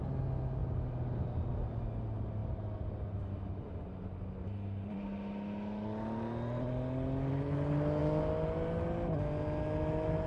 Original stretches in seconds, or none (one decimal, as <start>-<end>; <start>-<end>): 0.0-10.3